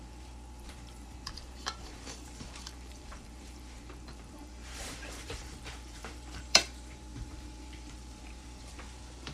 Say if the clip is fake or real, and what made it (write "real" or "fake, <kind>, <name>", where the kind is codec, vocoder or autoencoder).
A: fake, vocoder, BigVGAN v2